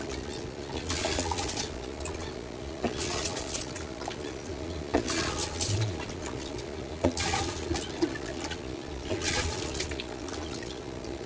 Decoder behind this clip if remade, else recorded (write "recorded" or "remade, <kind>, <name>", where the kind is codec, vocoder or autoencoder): remade, vocoder, Vocos